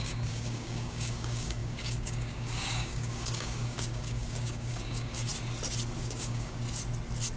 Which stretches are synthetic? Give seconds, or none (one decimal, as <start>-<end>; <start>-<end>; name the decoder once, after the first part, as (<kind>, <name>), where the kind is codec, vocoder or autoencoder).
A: 0.0-5.3 (codec, DAC); 6.0-6.6